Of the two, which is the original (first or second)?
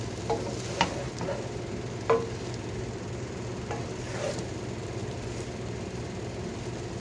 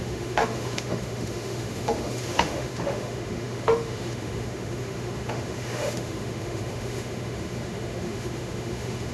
first